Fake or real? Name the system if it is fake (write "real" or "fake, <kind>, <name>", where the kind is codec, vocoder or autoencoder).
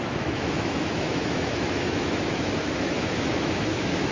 fake, autoencoder, DAC-VAE